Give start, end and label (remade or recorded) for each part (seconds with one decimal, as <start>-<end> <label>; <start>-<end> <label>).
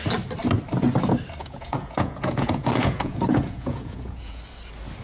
0.0-1.4 recorded; 1.4-4.4 remade; 4.4-5.0 recorded